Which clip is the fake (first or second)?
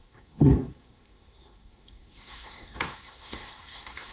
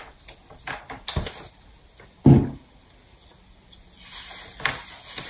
first